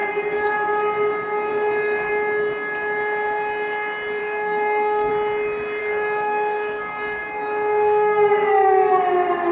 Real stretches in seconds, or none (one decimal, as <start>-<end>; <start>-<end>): 0.8-1.5; 2.1-4.2; 5.1-5.8; 9.0-9.5